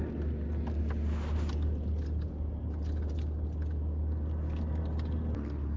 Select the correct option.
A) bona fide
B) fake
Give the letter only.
A